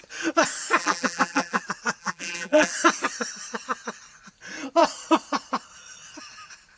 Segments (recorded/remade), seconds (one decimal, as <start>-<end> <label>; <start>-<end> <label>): 0.0-0.8 recorded; 0.8-1.6 remade; 1.6-2.0 recorded; 2.0-2.7 remade; 2.7-6.8 recorded